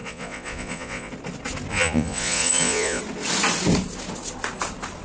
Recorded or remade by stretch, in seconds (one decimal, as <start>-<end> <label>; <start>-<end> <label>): 0.0-1.1 remade; 1.1-1.7 recorded; 1.7-3.0 remade; 3.0-5.0 recorded